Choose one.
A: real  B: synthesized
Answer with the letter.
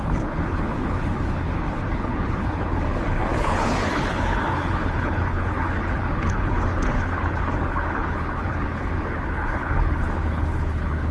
B